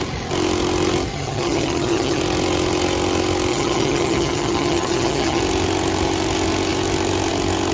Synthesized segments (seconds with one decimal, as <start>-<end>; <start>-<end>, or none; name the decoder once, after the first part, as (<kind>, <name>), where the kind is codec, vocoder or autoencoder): 1.1-2.2 (vocoder, HiFi-GAN); 3.5-5.4

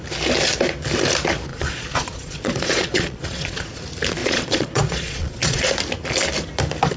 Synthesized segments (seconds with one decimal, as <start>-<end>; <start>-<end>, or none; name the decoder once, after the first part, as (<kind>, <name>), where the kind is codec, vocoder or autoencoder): 1.5-3.8 (vocoder, Vocos); 4.2-5.7

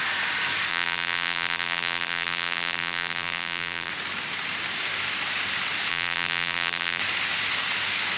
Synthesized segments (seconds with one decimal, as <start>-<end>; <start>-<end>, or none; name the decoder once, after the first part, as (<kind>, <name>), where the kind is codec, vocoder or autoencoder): 0.7-3.9 (vocoder, BigVGAN v2); 5.9-7.0

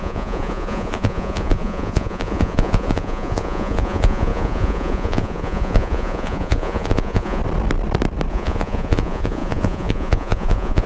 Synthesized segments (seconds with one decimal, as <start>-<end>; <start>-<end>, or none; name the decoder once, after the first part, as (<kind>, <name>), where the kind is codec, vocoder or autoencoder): 0.0-7.4 (vocoder, Vocos); 8.3-10.9